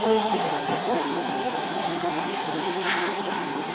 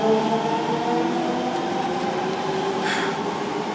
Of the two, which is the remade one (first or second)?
first